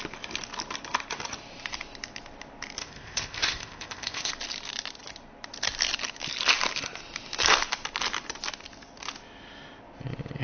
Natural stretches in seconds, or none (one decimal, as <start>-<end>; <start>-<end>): 0.0-2.8; 4.3-10.4